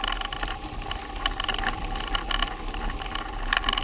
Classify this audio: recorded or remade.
recorded